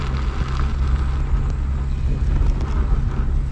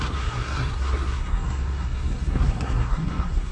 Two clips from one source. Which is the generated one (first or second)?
second